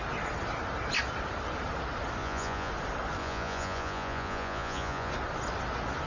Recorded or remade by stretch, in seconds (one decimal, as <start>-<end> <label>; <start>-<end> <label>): 0.0-2.2 recorded; 2.2-2.7 remade; 2.7-3.2 recorded; 3.2-5.1 remade; 5.1-6.1 recorded